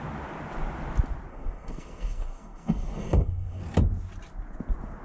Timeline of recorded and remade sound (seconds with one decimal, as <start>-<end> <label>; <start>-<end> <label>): 0.0-1.3 recorded; 1.3-3.6 remade; 3.6-5.0 recorded